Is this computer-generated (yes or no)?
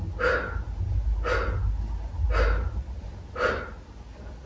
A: no